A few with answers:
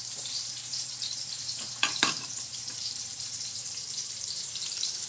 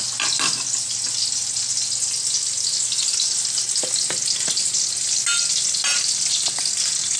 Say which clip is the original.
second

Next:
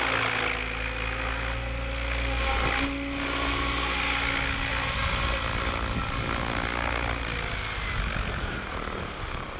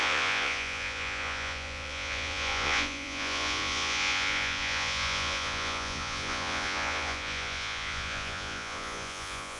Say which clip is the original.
first